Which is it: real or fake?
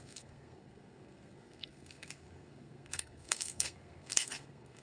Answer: fake